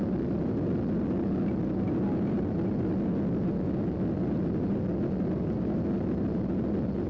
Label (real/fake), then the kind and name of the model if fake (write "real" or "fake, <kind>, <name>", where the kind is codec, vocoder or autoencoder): real